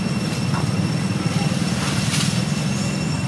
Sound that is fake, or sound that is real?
real